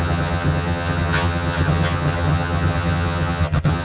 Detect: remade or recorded remade